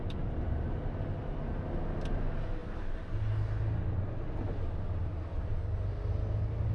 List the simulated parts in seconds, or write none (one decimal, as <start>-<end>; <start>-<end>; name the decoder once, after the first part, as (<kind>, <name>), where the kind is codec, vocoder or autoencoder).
none